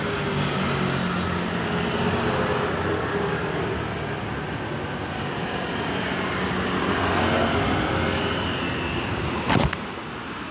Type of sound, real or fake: real